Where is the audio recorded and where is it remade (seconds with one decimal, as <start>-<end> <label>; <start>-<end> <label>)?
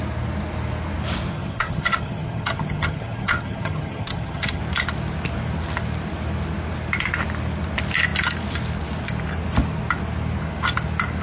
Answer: 0.0-1.3 recorded; 1.3-4.6 remade; 4.6-11.2 recorded